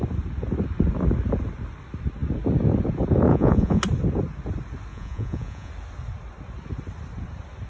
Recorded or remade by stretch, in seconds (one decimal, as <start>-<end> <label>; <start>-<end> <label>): 0.0-3.3 recorded; 3.3-3.8 remade; 3.8-4.9 recorded; 4.9-5.7 remade; 5.7-7.7 recorded